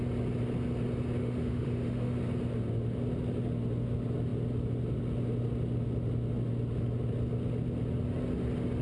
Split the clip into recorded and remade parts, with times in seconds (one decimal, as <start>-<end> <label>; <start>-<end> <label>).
0.0-1.2 recorded; 1.2-2.2 remade; 2.2-8.8 recorded